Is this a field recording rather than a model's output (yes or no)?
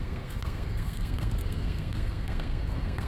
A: no